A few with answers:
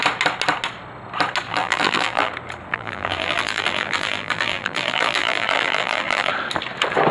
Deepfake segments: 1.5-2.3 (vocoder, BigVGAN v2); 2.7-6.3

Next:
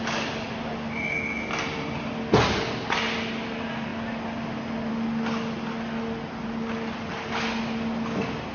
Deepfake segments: none